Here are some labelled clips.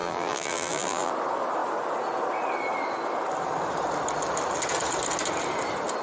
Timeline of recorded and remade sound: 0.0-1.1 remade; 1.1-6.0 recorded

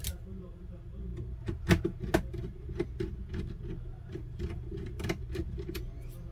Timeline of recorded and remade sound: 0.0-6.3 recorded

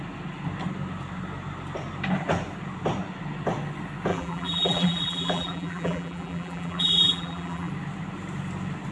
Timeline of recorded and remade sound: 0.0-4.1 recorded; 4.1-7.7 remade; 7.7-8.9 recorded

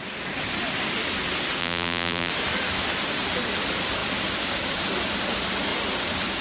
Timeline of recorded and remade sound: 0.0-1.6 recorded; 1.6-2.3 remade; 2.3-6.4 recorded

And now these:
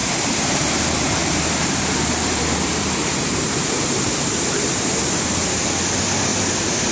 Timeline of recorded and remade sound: 0.0-0.6 remade; 0.6-1.6 recorded; 1.6-5.7 remade; 5.7-6.3 recorded; 6.3-6.9 remade